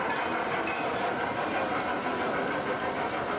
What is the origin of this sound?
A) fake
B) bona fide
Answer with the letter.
B